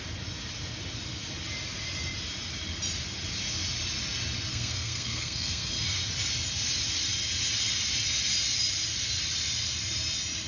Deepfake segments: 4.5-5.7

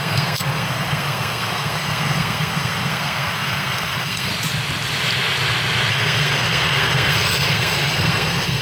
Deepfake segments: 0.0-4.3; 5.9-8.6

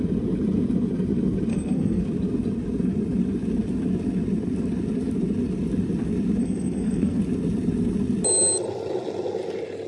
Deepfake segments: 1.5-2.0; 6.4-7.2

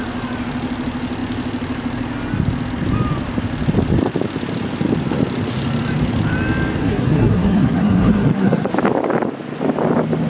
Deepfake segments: 6.8-8.7

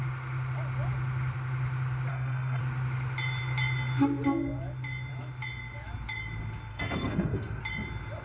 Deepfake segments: 2.1-2.6; 6.7-7.6

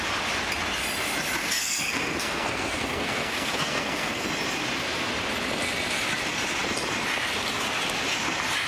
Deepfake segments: 1.4-4.2